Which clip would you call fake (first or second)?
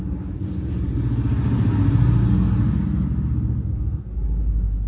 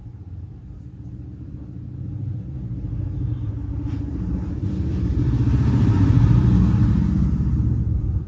second